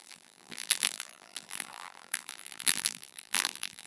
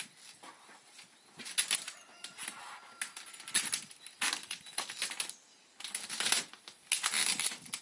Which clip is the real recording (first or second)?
second